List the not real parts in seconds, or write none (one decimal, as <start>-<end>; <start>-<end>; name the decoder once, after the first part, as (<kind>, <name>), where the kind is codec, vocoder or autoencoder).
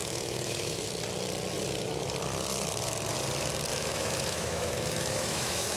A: 0.0-0.8 (autoencoder, DAC-VAE); 3.7-5.8